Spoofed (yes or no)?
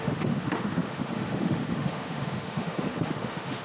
yes